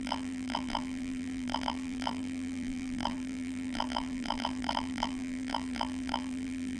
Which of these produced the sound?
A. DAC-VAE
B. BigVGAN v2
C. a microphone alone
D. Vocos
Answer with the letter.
B